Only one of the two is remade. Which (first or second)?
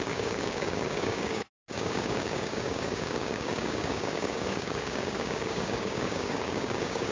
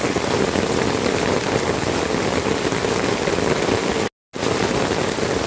first